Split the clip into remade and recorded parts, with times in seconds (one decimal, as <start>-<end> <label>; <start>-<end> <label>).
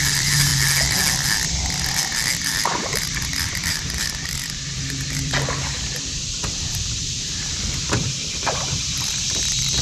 0.0-0.5 remade; 0.5-2.9 recorded; 2.9-9.8 remade